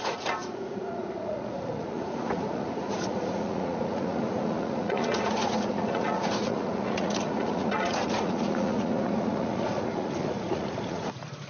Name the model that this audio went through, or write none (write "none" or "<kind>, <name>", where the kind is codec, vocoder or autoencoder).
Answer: vocoder, Vocos